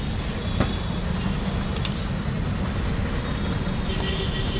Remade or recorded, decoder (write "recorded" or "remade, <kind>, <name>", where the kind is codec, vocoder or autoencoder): recorded